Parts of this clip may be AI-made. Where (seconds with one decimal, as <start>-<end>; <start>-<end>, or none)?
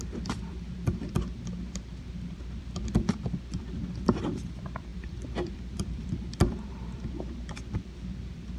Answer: 0.0-8.6